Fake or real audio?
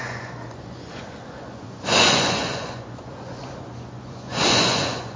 fake